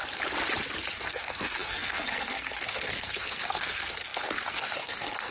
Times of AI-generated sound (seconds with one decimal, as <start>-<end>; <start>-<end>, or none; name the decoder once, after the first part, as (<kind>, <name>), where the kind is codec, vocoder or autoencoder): 0.9-5.3 (codec, SNAC)